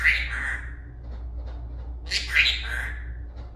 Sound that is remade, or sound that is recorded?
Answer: recorded